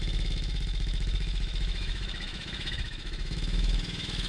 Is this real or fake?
fake